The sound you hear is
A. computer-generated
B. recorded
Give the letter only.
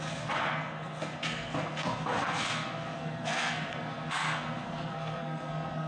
A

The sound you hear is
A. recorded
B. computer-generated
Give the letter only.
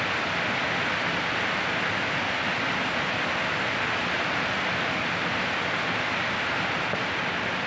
A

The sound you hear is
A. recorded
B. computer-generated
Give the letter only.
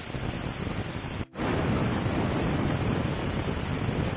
A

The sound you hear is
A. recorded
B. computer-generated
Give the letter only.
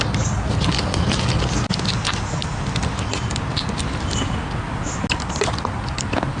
A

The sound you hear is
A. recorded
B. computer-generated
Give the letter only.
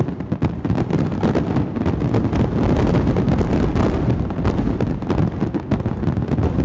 A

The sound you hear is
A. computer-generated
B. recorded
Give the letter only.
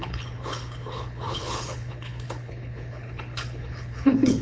A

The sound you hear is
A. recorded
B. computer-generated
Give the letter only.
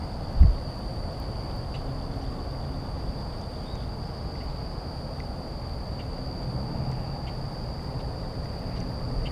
A